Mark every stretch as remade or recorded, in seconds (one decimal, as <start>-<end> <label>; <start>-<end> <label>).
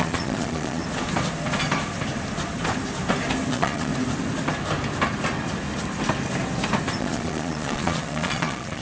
0.0-0.8 remade; 0.8-3.5 recorded; 3.5-3.9 remade; 3.9-7.0 recorded; 7.0-8.8 remade